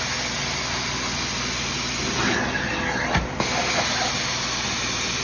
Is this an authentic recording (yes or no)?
yes